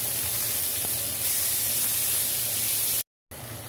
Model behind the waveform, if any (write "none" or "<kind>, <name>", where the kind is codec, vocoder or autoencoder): none